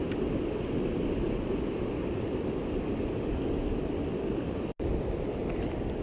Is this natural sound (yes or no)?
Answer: yes